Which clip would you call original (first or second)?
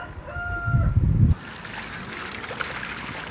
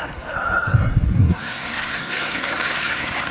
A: first